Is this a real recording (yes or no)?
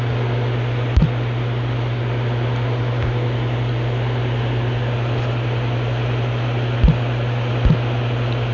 yes